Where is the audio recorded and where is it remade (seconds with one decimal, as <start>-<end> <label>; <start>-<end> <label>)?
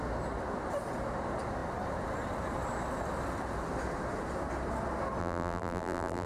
0.0-5.2 recorded; 5.2-6.3 remade